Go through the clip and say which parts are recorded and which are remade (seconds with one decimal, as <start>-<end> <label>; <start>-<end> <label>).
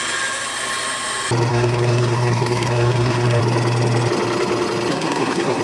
0.0-1.5 recorded; 1.5-3.4 remade; 3.4-4.9 recorded; 4.9-5.6 remade